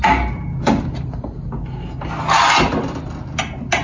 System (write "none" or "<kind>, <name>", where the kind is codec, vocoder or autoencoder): none